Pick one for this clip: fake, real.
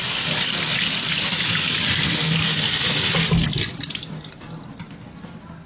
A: real